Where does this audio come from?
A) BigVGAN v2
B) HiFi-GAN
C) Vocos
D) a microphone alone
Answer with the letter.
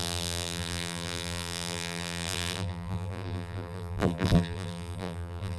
A